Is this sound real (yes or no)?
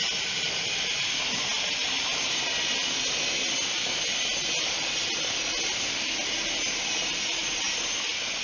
yes